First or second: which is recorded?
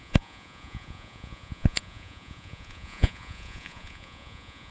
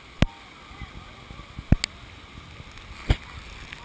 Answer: second